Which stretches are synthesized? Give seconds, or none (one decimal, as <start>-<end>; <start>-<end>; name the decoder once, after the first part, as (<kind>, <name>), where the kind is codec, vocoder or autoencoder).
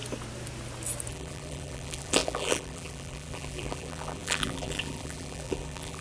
1.1-6.0 (vocoder, BigVGAN v2)